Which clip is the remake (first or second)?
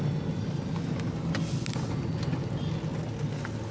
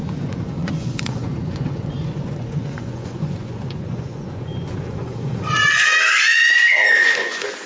second